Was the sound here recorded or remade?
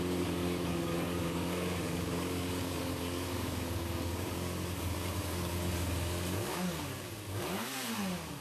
remade